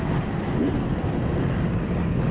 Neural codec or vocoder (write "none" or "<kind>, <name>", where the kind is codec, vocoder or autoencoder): none